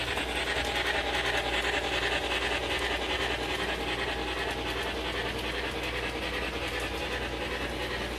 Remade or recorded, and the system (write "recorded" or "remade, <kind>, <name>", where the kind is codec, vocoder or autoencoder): recorded